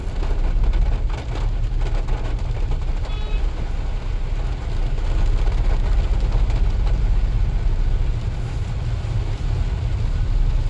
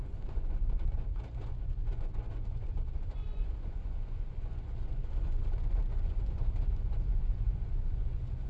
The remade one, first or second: second